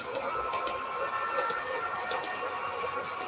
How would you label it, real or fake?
real